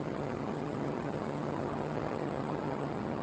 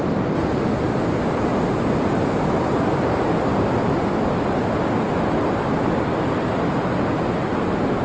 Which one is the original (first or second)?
second